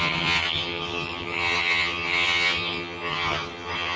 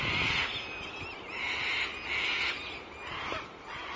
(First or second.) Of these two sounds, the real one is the second